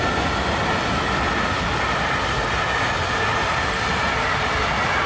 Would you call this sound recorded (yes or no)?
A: yes